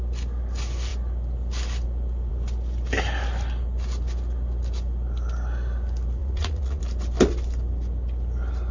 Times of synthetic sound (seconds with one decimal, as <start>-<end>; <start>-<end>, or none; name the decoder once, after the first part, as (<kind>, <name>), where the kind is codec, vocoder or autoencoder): 6.2-6.8 (vocoder, Vocos)

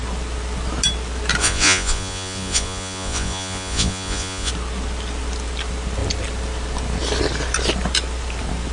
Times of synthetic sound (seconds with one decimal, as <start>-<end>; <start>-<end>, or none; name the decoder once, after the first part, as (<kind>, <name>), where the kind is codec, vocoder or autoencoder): 1.4-4.5 (vocoder, Vocos)

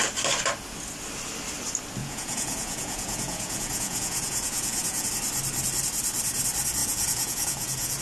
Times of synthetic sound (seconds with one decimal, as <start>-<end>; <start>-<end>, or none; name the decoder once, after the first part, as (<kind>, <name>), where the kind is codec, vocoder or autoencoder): 2.0-5.1 (vocoder, Vocos); 6.8-8.0